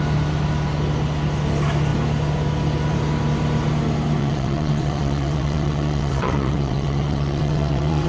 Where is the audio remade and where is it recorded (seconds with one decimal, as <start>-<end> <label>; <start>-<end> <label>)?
0.0-4.2 recorded; 4.2-8.1 remade